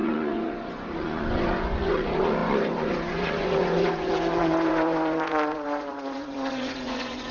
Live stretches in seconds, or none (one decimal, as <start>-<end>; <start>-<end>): none